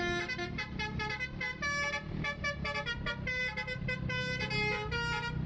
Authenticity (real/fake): real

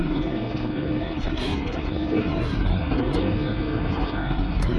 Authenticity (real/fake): fake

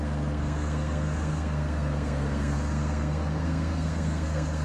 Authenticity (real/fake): fake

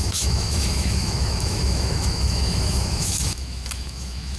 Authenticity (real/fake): fake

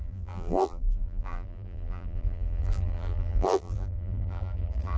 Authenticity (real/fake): fake